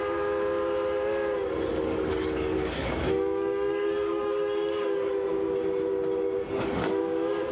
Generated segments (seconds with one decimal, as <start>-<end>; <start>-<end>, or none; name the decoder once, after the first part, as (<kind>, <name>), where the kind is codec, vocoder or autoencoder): 1.7-5.3 (codec, DAC); 6.4-7.0